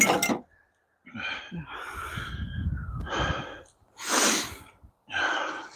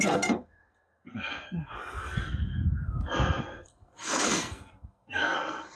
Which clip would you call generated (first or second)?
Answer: second